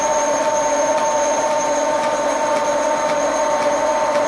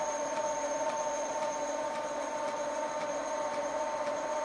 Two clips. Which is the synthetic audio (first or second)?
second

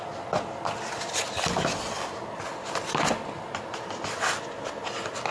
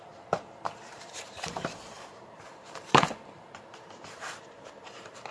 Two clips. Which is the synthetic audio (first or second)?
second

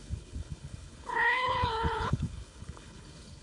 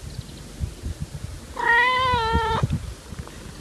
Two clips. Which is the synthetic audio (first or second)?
first